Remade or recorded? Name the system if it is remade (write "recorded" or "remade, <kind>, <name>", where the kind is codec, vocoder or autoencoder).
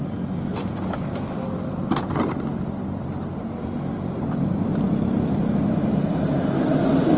remade, vocoder, BigVGAN v2